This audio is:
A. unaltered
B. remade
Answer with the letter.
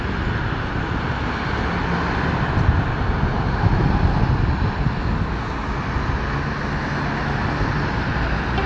A